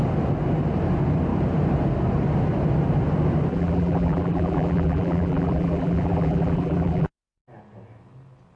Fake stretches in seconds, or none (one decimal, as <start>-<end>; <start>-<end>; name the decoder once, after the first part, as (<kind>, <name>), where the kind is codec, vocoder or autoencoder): 3.5-7.1 (vocoder, BigVGAN v2)